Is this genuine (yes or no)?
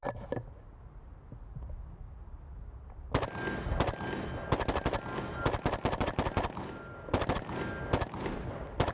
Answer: yes